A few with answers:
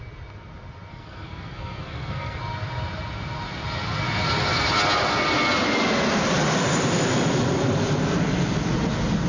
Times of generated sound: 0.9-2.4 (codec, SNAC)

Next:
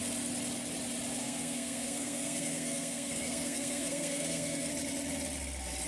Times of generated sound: 1.2-4.7 (codec, SNAC)